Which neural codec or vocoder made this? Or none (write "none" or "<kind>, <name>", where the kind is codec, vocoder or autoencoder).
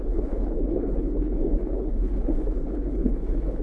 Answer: codec, HILCodec